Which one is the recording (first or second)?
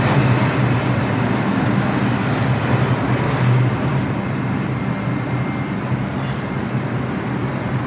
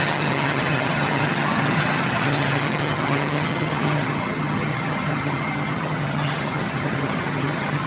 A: first